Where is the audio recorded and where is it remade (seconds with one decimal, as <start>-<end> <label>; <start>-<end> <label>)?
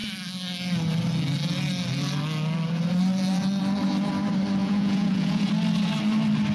0.0-4.6 recorded; 4.6-5.5 remade; 5.5-6.5 recorded